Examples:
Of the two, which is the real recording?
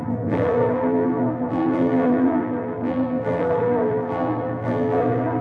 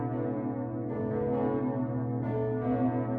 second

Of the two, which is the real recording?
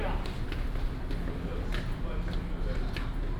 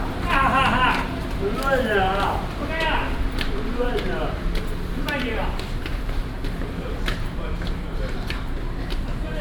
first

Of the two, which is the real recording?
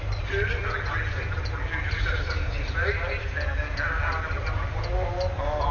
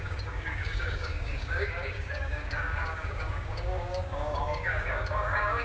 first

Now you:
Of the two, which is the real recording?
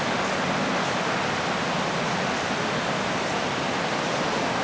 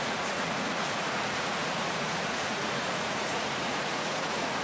first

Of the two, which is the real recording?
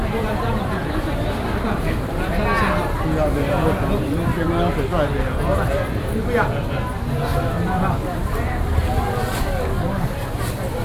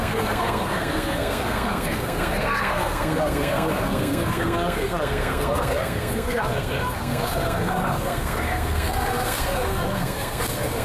first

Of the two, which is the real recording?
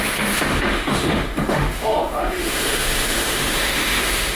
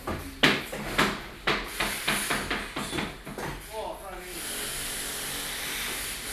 second